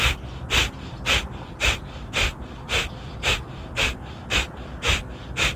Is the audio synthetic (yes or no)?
no